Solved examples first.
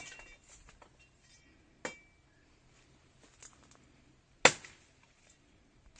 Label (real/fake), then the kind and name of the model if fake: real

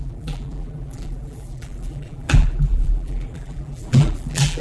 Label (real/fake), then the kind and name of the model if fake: fake, vocoder, BigVGAN v2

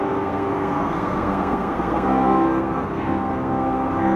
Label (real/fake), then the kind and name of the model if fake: fake, codec, SNAC